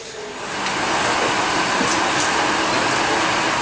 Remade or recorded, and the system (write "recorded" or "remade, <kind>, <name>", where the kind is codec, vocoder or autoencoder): recorded